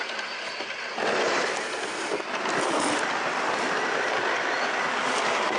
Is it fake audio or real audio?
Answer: real